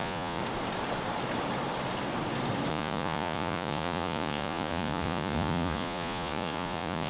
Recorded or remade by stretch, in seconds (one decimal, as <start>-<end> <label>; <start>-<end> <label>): 0.0-0.4 remade; 0.4-2.7 recorded; 2.7-7.1 remade

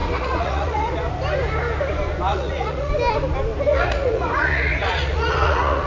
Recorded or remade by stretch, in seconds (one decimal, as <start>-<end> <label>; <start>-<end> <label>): 0.0-0.9 remade; 0.9-2.3 recorded; 2.3-2.9 remade; 2.9-3.7 recorded; 3.7-5.9 remade

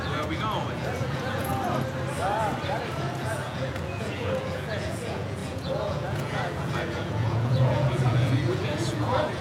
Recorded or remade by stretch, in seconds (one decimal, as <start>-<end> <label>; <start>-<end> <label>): 0.0-1.5 remade; 1.5-3.0 recorded; 3.0-9.4 remade

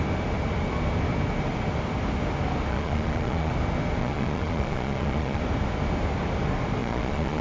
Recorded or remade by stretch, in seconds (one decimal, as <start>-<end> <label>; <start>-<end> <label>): 0.0-2.7 recorded; 2.7-3.5 remade; 3.5-4.0 recorded; 4.0-5.4 remade; 5.4-6.8 recorded; 6.8-7.4 remade

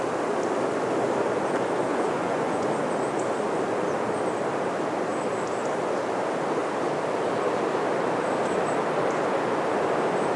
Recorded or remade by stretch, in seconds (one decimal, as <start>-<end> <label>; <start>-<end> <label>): 0.0-1.9 recorded; 1.9-2.7 remade; 2.7-10.4 recorded